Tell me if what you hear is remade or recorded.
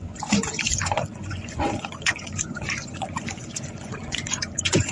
remade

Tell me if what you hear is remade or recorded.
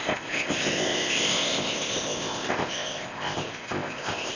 remade